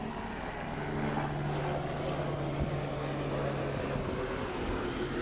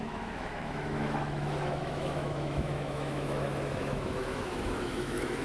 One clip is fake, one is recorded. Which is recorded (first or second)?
first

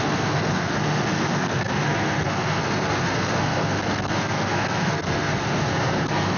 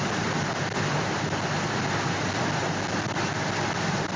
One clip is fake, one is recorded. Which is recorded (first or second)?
second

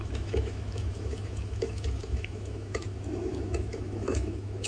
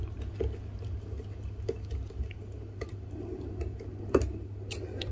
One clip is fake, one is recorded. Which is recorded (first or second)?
second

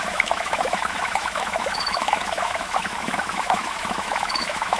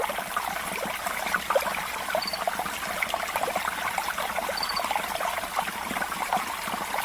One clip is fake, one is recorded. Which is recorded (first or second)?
second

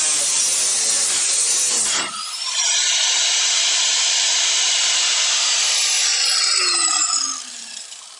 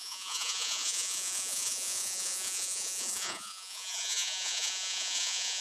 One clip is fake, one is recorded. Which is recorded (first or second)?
first